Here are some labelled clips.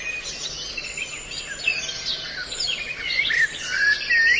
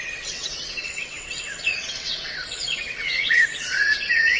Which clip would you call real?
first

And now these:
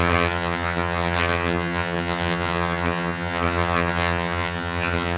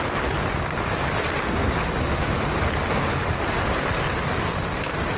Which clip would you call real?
second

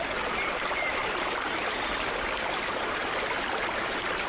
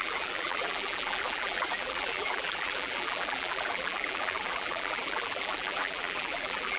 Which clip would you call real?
first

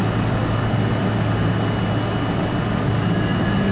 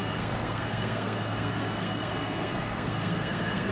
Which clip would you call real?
first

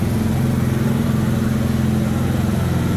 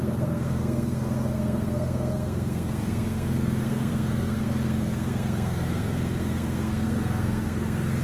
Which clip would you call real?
first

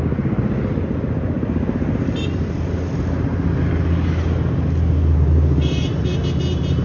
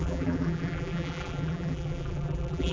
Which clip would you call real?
first